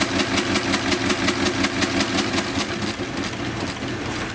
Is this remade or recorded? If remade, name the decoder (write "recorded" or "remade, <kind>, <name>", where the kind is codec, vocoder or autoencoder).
recorded